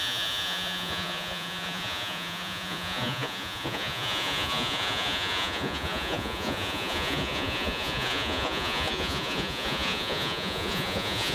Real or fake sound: fake